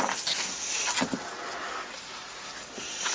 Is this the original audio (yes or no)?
yes